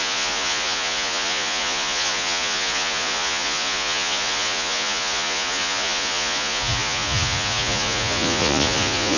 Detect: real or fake fake